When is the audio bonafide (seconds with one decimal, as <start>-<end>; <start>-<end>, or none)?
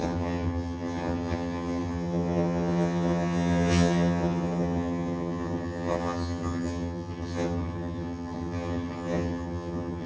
none